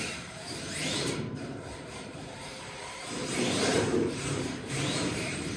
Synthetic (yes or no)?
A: yes